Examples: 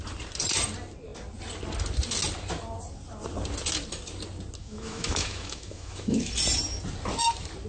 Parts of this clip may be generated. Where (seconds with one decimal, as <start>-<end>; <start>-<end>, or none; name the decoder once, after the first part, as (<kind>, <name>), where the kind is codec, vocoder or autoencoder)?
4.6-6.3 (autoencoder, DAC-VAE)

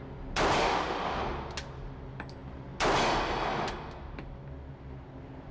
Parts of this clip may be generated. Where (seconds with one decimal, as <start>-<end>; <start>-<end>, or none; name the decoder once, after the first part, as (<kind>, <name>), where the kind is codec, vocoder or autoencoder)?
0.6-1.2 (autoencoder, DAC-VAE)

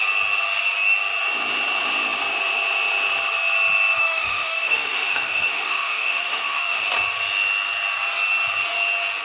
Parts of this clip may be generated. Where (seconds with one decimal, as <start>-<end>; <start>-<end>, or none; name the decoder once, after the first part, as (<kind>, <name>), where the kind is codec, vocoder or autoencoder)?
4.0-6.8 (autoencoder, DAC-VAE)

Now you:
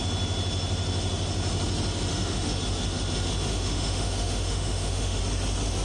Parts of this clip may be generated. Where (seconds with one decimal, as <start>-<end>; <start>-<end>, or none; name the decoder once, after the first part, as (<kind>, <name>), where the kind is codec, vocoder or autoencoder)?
2.1-2.6 (autoencoder, DAC-VAE); 3.5-5.2

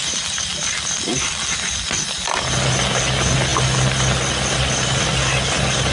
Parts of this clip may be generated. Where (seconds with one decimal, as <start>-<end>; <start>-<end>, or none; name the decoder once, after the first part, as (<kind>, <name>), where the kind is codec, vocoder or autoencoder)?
none

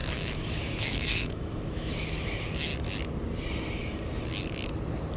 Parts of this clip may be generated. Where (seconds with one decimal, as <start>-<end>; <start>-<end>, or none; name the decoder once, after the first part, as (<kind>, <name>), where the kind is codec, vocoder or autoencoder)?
0.0-2.7 (autoencoder, DAC-VAE)

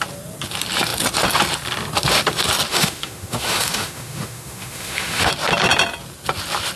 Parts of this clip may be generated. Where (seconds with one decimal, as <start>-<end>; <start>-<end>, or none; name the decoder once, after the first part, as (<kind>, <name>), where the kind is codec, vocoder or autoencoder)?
2.7-5.3 (autoencoder, DAC-VAE)

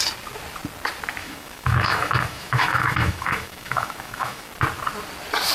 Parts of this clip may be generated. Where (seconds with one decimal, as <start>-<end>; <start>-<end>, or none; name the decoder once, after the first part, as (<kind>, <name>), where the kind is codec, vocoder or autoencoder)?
1.2-4.5 (autoencoder, DAC-VAE)